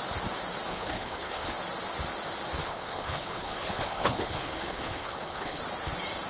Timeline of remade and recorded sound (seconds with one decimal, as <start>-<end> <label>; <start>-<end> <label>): 0.0-0.7 recorded; 0.7-1.5 remade; 1.5-2.6 recorded; 2.6-5.6 remade; 5.6-6.3 recorded